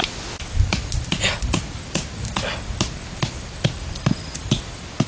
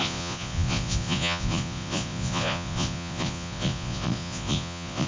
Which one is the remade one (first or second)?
second